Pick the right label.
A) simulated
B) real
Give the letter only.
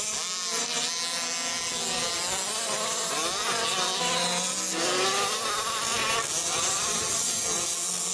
B